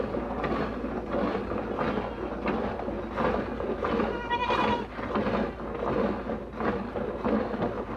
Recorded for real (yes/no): yes